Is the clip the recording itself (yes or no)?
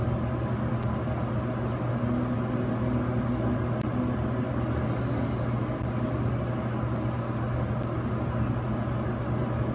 yes